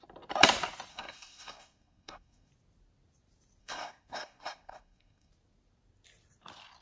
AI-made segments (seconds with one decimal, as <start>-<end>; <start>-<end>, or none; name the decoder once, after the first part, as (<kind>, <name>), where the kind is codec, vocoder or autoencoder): 0.9-2.5 (codec, SNAC); 3.6-5.3